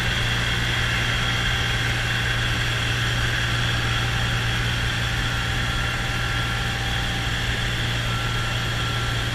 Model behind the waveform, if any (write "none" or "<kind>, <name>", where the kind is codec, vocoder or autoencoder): none